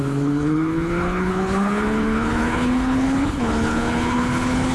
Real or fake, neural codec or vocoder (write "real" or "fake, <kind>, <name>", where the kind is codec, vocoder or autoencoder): fake, codec, HILCodec